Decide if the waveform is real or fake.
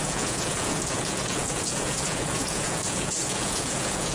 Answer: fake